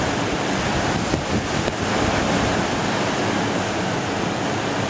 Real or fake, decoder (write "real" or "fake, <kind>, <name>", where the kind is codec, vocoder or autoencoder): real